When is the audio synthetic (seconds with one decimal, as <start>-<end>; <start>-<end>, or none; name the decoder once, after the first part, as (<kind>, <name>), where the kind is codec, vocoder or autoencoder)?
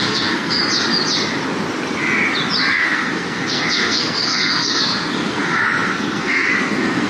0.0-0.6 (codec, SNAC); 2.7-7.1